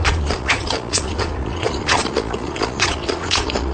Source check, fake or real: fake